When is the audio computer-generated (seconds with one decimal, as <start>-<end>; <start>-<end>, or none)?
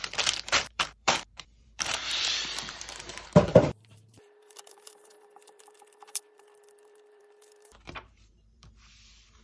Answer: 0.5-9.4